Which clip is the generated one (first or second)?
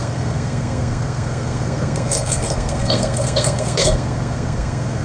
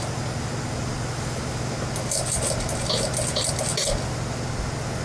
first